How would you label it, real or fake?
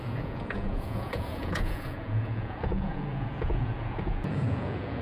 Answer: fake